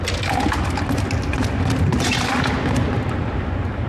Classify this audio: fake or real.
real